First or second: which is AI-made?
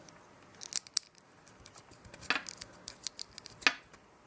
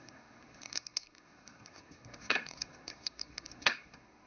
second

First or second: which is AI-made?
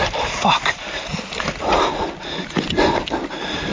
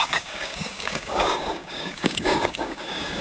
second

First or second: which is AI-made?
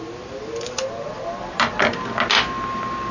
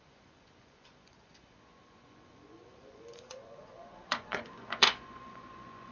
second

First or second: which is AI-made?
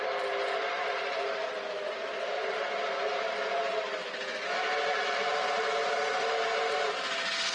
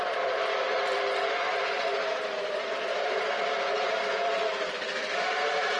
second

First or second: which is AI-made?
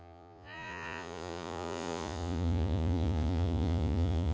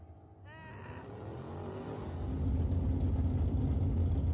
first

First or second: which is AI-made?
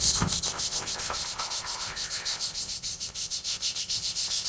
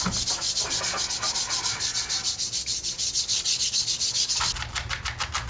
first